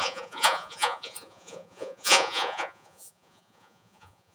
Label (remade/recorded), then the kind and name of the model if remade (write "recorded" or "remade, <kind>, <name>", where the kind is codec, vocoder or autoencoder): remade, vocoder, Vocos